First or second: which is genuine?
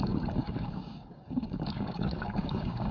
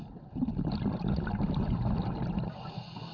second